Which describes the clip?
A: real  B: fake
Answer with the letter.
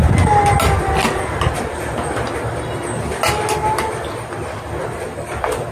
A